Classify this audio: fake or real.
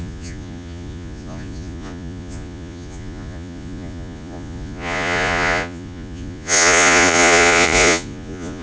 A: fake